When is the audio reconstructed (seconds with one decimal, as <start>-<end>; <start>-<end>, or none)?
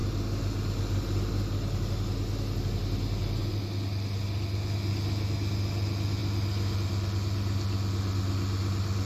none